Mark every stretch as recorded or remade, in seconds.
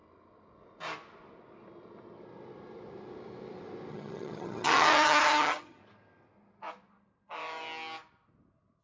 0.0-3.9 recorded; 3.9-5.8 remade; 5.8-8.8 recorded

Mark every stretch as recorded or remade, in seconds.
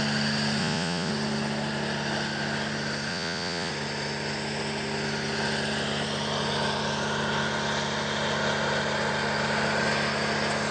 0.0-0.6 recorded; 0.6-1.1 remade; 1.1-3.1 recorded; 3.1-3.7 remade; 3.7-10.7 recorded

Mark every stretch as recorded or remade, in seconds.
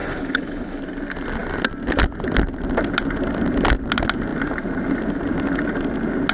0.0-0.8 remade; 0.8-6.3 recorded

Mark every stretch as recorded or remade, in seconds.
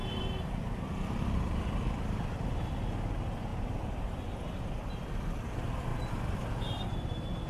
0.0-3.5 remade; 3.5-5.1 recorded; 5.1-7.5 remade